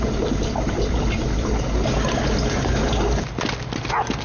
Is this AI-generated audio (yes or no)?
no